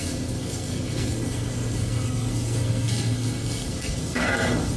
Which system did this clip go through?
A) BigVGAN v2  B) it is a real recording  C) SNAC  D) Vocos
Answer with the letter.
C